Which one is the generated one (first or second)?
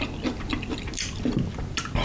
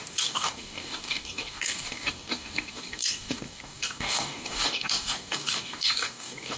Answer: second